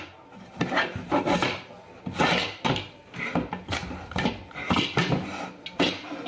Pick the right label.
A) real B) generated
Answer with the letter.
A